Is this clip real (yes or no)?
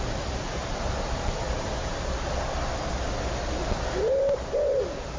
yes